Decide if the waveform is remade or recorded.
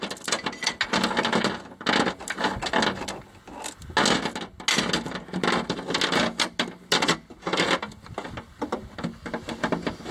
recorded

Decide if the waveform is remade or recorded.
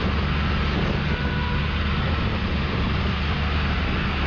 recorded